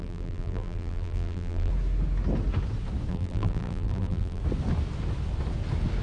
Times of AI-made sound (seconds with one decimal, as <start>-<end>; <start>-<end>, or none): 0.0-1.7; 3.1-4.4